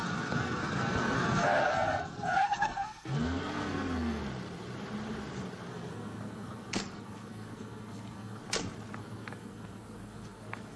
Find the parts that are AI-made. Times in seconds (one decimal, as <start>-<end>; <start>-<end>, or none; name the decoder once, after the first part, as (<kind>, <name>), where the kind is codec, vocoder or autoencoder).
0.0-4.2 (codec, SNAC); 5.7-8.4; 9.0-10.8